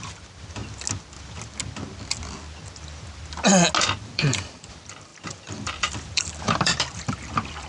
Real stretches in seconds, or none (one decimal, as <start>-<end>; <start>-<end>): 0.6-3.8